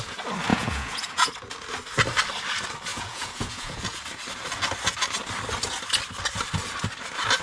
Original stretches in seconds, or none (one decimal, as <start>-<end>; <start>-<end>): 0.0-0.5; 1.3-2.9; 4.0-7.4